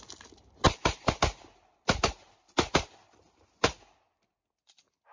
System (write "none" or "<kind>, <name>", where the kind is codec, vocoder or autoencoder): none